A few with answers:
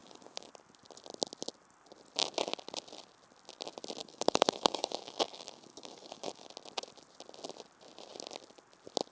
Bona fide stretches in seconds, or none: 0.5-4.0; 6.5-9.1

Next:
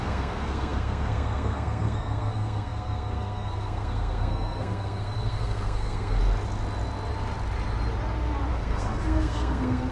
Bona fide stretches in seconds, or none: 6.2-8.5

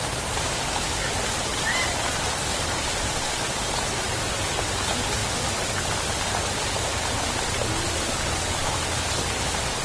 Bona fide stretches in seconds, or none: 0.0-1.5; 3.3-9.8